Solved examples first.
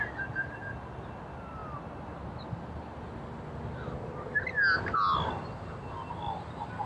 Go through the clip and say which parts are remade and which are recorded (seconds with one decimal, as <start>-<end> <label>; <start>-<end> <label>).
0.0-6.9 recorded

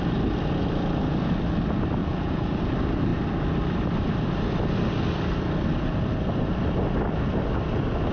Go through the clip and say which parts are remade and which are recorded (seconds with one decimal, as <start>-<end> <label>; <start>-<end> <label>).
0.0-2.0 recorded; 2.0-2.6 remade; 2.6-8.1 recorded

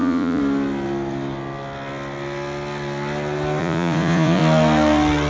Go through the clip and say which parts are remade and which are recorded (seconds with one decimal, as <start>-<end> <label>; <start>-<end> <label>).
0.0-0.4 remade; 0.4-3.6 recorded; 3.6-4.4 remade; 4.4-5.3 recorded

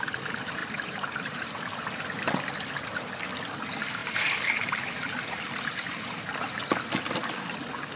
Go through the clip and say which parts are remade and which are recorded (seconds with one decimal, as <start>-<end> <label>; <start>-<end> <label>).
0.0-0.6 recorded; 0.6-2.0 remade; 2.0-4.0 recorded; 4.0-5.7 remade; 5.7-8.0 recorded

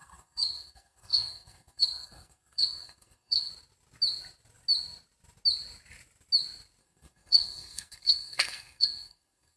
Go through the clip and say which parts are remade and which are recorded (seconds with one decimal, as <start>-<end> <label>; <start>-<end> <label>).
0.0-3.5 remade; 3.5-6.8 recorded; 6.8-9.6 remade

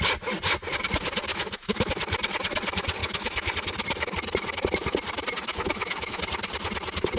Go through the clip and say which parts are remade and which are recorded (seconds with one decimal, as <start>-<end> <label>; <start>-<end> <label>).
0.0-1.3 recorded; 1.3-1.9 remade; 1.9-3.0 recorded; 3.0-3.5 remade; 3.5-5.5 recorded; 5.5-6.2 remade; 6.2-7.2 recorded

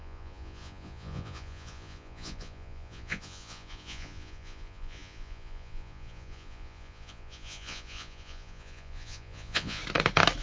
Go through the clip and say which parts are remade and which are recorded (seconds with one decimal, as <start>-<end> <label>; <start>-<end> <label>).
0.0-9.8 remade; 9.8-10.4 recorded